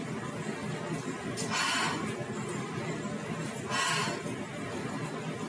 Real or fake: real